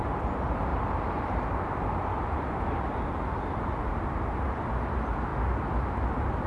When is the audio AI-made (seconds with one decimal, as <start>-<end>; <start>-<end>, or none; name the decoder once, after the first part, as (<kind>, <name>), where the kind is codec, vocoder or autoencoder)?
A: none